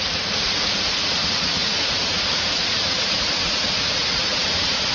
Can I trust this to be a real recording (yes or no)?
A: no